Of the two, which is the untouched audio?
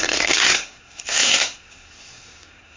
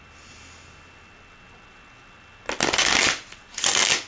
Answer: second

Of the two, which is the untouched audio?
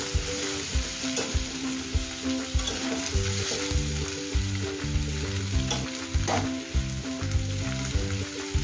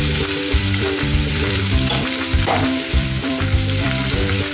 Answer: first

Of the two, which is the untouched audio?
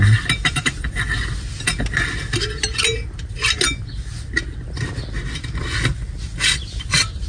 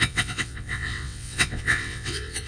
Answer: first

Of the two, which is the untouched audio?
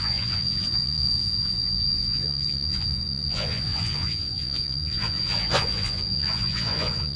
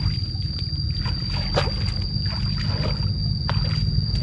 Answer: second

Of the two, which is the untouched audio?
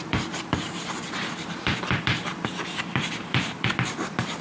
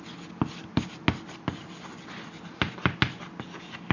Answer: second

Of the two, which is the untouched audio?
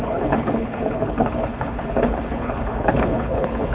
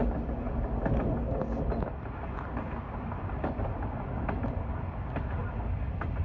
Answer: second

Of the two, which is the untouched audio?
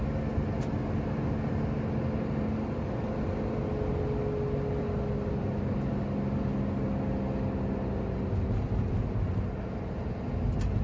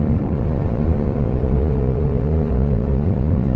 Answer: first